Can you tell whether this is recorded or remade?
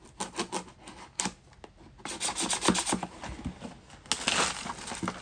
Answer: recorded